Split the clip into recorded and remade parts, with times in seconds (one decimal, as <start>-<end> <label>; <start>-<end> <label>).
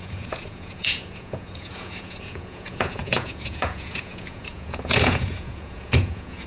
0.0-6.5 remade